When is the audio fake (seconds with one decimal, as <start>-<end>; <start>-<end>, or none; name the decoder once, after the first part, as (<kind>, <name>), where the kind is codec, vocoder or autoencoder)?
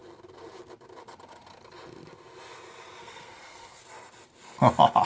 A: 3.0-3.8 (codec, SNAC)